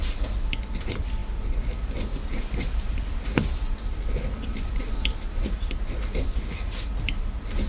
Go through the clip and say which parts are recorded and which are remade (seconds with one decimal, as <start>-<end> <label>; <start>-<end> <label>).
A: 0.0-7.7 remade